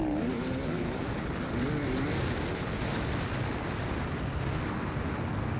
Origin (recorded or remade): recorded